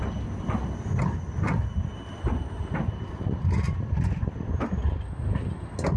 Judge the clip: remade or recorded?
recorded